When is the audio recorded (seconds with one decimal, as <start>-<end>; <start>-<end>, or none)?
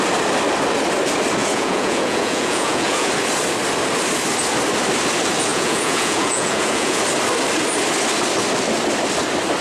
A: 0.0-1.4; 3.1-5.5; 7.0-9.6